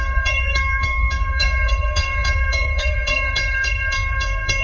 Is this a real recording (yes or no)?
no